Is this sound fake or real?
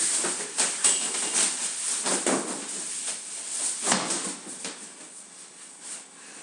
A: real